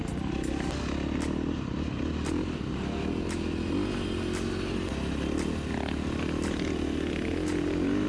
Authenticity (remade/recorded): recorded